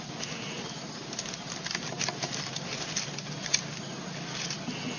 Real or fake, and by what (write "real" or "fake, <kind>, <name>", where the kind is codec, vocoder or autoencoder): real